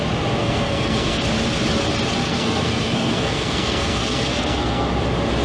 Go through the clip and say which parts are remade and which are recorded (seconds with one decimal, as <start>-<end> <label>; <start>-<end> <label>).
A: 0.0-0.4 recorded; 0.4-1.2 remade; 1.2-2.2 recorded; 2.2-4.9 remade; 4.9-5.4 recorded

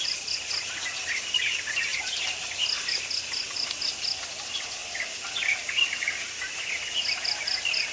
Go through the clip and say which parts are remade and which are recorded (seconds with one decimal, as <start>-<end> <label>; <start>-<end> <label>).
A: 0.0-1.9 recorded; 1.9-2.6 remade; 2.6-7.9 recorded

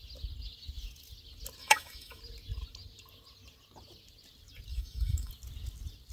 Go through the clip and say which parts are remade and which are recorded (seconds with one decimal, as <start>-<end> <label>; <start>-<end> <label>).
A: 0.0-1.6 recorded; 1.6-2.2 remade; 2.2-4.7 recorded; 4.7-5.3 remade; 5.3-6.1 recorded

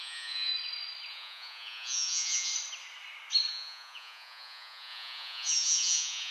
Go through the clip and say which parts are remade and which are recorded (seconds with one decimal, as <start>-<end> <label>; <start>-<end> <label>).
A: 0.0-0.5 remade; 0.5-1.1 recorded; 1.1-2.5 remade; 2.5-3.5 recorded; 3.5-6.3 remade

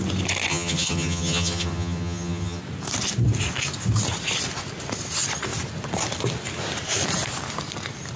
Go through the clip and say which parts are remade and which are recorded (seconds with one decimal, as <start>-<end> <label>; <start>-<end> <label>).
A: 0.0-0.5 recorded; 0.5-2.6 remade; 2.6-8.2 recorded

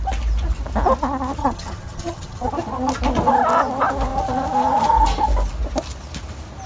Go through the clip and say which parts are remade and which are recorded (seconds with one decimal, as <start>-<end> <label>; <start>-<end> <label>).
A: 0.0-1.4 recorded; 1.4-2.5 remade; 2.5-6.7 recorded